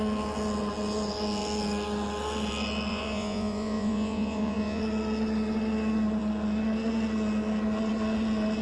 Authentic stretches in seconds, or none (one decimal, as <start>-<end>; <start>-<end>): 0.0-2.9; 4.8-8.6